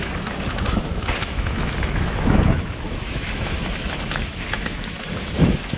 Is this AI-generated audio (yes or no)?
yes